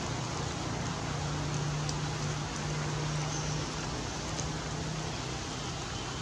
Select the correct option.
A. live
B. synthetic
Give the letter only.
A